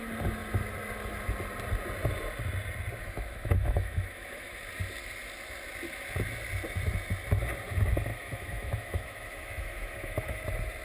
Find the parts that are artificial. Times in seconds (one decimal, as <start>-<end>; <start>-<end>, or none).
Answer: 3.0-4.6; 8.1-10.4